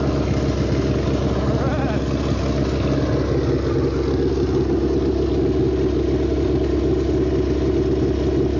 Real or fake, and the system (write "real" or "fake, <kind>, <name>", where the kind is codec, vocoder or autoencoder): real